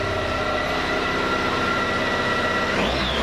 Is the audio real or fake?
real